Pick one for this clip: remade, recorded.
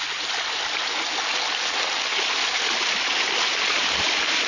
recorded